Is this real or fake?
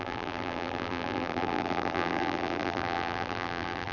fake